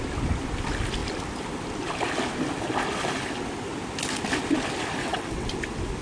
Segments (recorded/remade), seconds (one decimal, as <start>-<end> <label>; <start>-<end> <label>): 0.0-5.0 recorded; 5.0-5.5 remade; 5.5-6.0 recorded